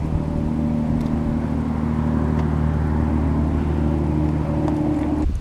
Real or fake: real